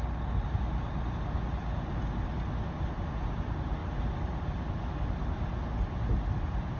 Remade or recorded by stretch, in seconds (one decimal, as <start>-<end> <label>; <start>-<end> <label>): 0.0-6.8 recorded